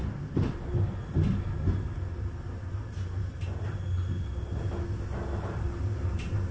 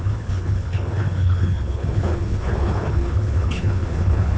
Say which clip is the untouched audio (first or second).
first